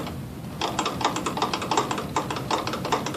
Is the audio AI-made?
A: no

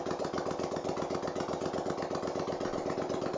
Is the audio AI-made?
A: no